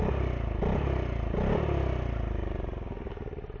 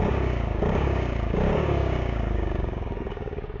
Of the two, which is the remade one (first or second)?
second